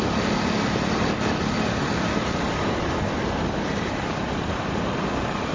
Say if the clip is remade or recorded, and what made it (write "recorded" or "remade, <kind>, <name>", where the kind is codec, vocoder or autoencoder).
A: recorded